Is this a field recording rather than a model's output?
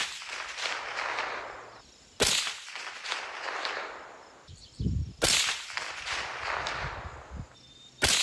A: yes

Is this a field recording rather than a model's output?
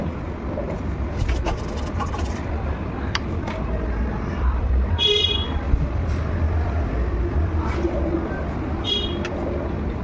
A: no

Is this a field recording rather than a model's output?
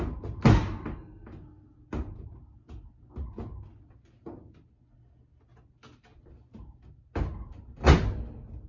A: yes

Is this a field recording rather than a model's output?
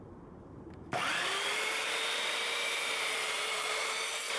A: no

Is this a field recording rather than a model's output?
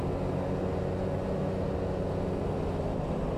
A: yes